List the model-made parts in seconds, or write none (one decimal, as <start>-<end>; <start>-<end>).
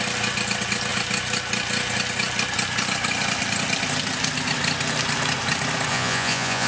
5.9-6.7